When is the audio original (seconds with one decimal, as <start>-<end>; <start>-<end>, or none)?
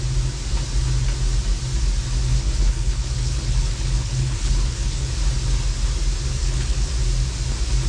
0.0-2.3; 5.1-6.4; 6.9-7.9